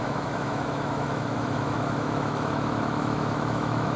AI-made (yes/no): yes